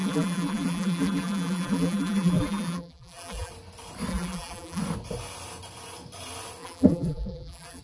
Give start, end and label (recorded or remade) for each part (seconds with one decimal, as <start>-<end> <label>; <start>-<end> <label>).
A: 0.0-3.5 remade; 3.5-4.1 recorded; 4.1-4.8 remade; 4.8-6.6 recorded; 6.6-7.8 remade